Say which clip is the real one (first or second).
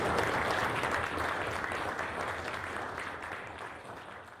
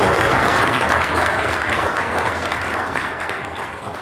first